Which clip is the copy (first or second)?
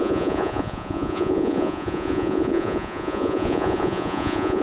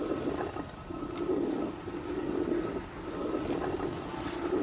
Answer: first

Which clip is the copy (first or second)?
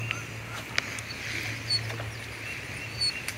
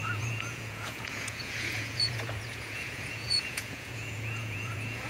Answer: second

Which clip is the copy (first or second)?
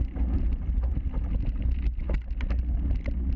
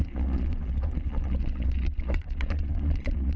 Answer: second